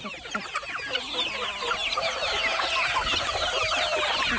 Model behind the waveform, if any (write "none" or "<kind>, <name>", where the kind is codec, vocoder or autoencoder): none